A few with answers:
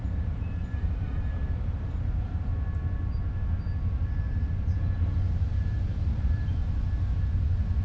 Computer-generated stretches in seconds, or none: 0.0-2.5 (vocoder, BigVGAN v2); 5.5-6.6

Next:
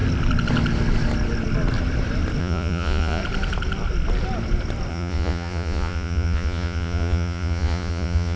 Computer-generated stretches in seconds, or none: 2.4-3.2 (vocoder, Vocos); 4.9-8.4

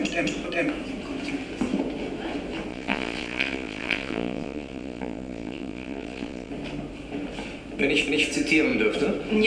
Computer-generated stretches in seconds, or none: 2.7-6.5 (vocoder, Vocos)

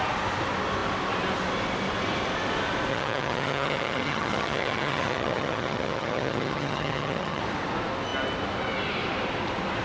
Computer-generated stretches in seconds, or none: 2.9-7.4 (vocoder, HiFi-GAN)

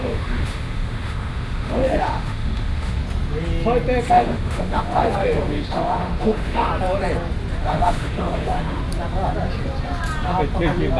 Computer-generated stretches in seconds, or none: 0.0-3.0 (autoencoder, DAC-VAE); 4.1-6.7; 7.6-8.8